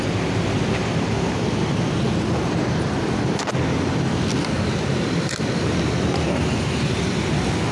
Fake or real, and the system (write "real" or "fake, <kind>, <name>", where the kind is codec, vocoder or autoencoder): fake, vocoder, BigVGAN v2